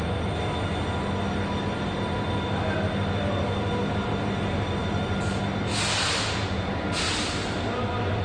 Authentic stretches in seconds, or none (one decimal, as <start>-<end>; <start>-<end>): 0.0-4.8; 5.4-8.2